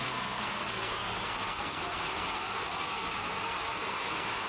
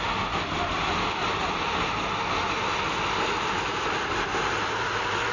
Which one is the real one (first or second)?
second